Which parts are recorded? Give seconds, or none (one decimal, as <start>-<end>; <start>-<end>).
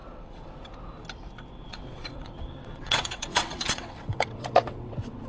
0.7-1.7